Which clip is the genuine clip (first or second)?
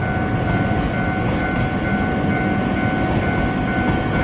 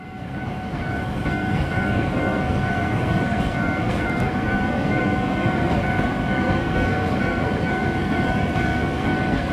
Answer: first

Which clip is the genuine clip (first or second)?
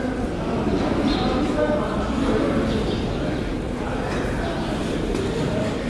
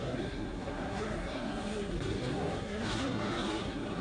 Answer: first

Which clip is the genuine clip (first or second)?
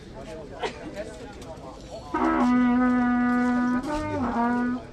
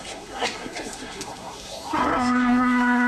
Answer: first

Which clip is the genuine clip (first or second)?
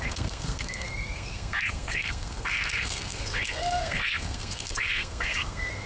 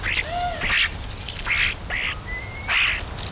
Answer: second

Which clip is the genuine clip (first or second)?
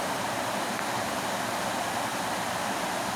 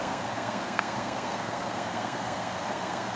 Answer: first